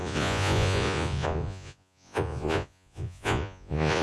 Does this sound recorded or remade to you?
remade